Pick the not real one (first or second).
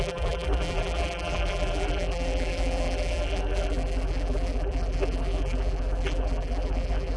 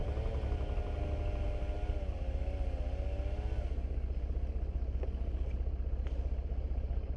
first